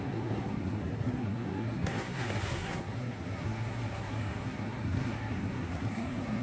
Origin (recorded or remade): remade